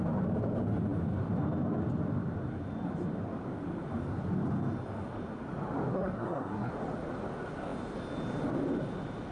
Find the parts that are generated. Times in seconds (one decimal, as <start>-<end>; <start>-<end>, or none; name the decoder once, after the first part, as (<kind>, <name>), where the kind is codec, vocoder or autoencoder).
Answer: 5.9-6.7 (codec, SNAC)